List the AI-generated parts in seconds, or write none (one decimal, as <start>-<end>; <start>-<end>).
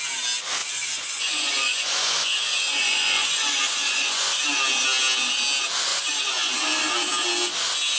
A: 0.6-4.4; 5.9-6.5